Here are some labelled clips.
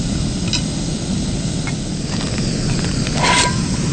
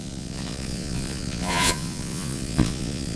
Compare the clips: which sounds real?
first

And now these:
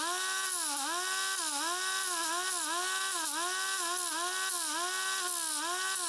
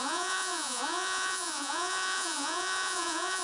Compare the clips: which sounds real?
first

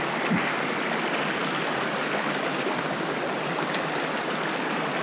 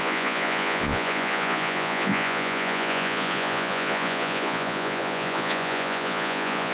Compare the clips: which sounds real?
first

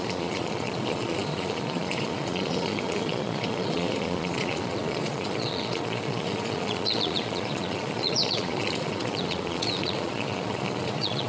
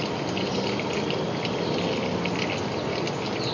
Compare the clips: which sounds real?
second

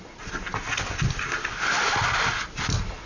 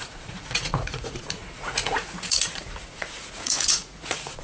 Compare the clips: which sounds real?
first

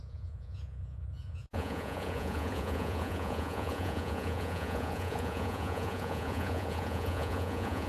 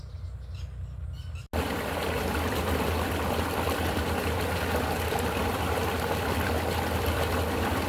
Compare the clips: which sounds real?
second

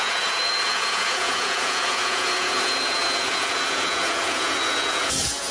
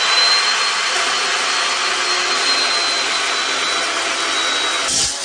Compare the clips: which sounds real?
second